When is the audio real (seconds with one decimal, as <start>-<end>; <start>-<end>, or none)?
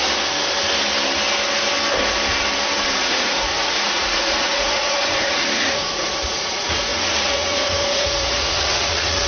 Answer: 0.0-3.0